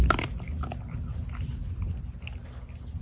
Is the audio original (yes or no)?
yes